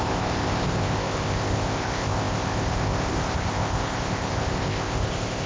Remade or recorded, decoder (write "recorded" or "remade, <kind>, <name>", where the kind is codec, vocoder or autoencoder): remade, codec, ZipCodec